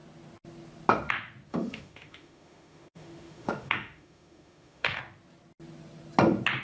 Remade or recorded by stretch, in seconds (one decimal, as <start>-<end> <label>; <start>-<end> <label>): 0.0-1.5 recorded; 1.5-5.0 remade; 5.0-6.6 recorded